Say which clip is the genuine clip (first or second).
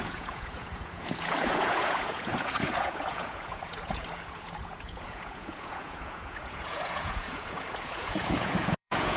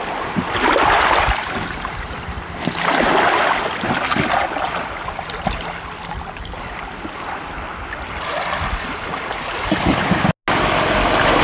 second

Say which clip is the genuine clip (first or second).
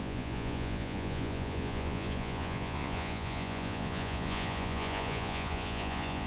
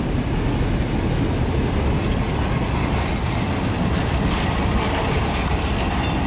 second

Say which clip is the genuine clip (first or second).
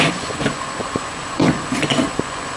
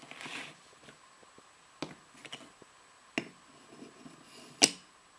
second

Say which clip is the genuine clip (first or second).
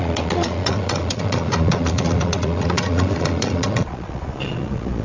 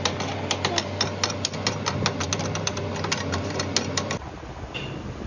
second